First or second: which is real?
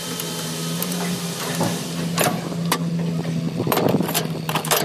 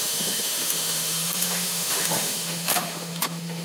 first